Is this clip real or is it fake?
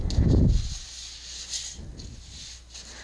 real